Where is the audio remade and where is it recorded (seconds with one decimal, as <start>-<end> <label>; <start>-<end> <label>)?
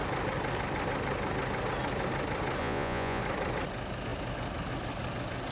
0.0-2.6 recorded; 2.6-3.2 remade; 3.2-5.5 recorded